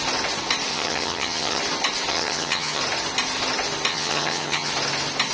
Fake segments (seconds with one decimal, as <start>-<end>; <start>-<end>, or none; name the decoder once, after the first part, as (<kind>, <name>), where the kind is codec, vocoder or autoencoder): 0.7-1.6 (vocoder, HiFi-GAN); 2.1-2.8; 3.9-4.7